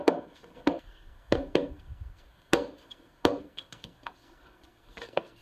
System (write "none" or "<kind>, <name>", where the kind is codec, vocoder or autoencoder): codec, SNAC